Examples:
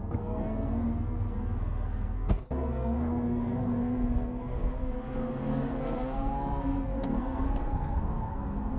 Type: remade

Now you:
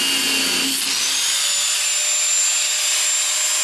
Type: recorded